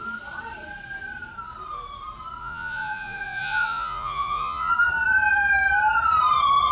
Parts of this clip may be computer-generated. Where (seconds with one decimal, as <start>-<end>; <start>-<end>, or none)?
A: 2.4-4.7

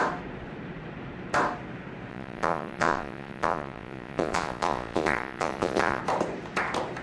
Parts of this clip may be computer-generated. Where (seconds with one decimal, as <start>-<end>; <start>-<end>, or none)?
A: 2.1-6.0